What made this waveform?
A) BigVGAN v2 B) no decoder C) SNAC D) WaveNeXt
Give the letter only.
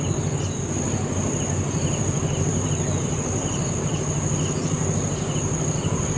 B